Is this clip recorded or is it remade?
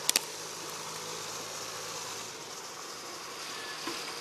recorded